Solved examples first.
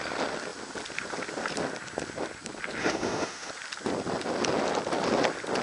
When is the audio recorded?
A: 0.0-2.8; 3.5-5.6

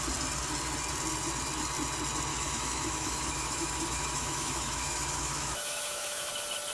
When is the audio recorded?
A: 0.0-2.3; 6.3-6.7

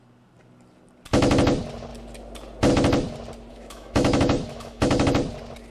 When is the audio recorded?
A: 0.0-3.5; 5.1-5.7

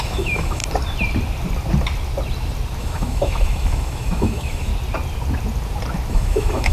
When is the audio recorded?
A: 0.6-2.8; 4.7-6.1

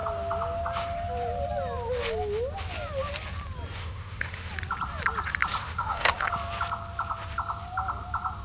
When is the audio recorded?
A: 0.0-3.8; 4.5-5.6; 6.3-8.4

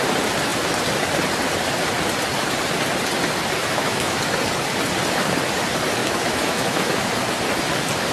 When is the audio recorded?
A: 0.0-3.6; 4.2-6.0; 7.1-8.1